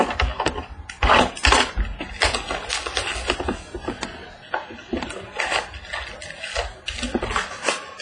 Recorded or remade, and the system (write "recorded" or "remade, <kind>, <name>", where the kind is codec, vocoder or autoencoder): recorded